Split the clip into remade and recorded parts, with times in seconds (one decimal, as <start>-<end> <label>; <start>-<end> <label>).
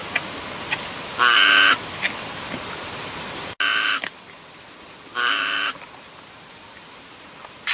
0.0-7.7 recorded